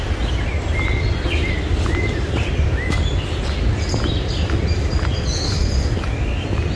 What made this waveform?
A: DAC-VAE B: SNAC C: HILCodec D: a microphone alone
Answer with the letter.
D